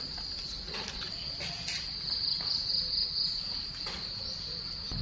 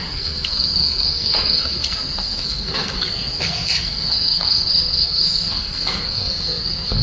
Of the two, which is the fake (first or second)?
second